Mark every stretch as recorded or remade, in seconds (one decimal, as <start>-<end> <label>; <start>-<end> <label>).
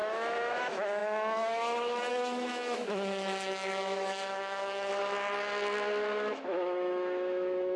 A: 0.0-4.9 remade; 4.9-6.3 recorded; 6.3-7.8 remade